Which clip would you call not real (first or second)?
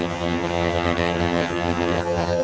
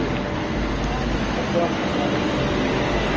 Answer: first